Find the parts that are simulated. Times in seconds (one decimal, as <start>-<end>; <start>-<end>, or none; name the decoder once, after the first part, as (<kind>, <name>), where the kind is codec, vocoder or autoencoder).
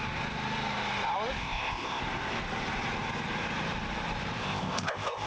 1.4-2.0 (codec, ZipCodec); 4.4-5.3